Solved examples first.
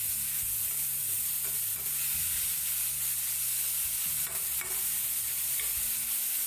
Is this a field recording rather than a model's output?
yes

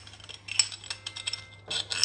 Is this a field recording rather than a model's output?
yes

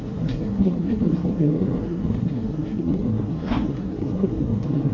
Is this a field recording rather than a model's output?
no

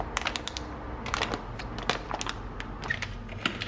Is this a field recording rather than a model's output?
yes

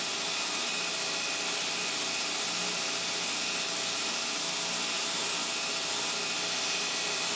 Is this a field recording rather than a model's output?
yes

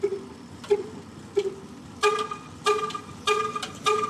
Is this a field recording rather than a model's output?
yes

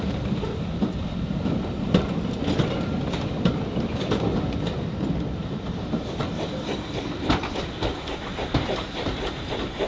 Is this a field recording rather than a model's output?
no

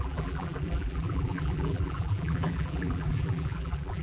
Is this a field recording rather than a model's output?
no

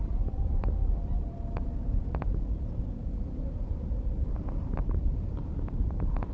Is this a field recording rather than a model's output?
no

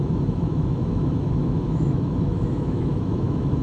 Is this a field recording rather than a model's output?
no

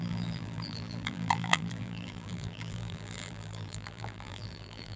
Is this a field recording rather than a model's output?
no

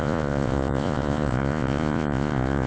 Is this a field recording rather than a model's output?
no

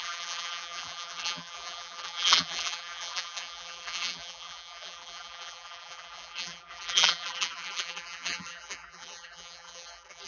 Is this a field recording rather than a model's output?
no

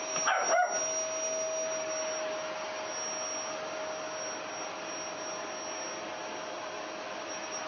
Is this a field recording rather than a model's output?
yes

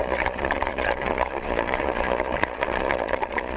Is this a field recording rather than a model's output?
no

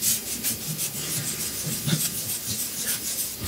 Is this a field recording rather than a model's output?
yes